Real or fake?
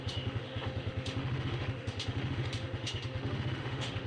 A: fake